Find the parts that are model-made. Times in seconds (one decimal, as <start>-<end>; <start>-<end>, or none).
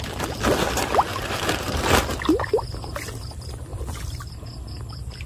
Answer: 1.1-1.8